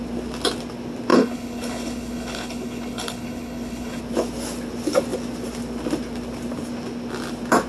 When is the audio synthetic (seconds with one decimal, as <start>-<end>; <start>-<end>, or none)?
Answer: 1.1-4.0